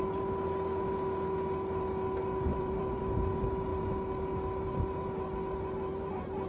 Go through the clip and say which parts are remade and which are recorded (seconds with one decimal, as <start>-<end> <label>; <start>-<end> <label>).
0.0-2.5 recorded; 2.5-3.0 remade; 3.0-6.5 recorded